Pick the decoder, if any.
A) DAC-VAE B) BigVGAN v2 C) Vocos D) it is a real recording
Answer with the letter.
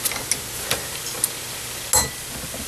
D